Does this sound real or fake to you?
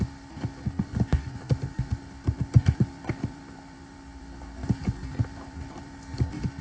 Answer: fake